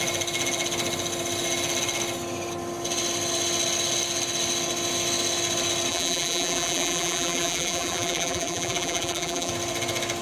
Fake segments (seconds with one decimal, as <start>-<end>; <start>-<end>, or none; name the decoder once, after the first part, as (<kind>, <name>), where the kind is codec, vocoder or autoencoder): 5.9-9.5 (vocoder, BigVGAN v2)